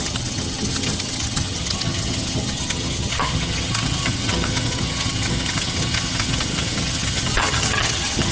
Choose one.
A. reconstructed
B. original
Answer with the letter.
A